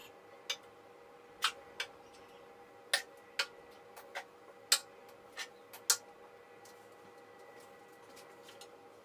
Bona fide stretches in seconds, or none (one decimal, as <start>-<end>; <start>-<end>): 0.0-9.0